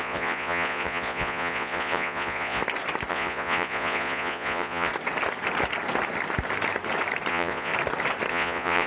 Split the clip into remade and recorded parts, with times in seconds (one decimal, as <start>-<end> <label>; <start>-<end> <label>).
0.0-2.6 remade; 2.6-3.1 recorded; 3.1-4.9 remade; 4.9-7.3 recorded; 7.3-7.7 remade; 7.7-8.3 recorded; 8.3-8.9 remade